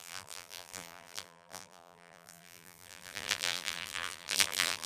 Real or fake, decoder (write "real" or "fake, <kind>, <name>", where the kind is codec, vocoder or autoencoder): fake, vocoder, BigVGAN v2